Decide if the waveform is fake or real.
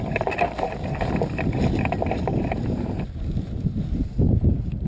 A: real